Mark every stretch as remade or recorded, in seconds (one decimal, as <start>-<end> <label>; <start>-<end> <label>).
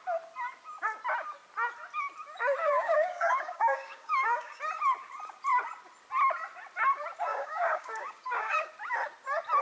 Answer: 0.0-2.6 recorded; 2.6-4.6 remade; 4.6-7.3 recorded; 7.3-8.7 remade; 8.7-9.6 recorded